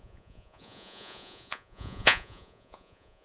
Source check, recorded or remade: remade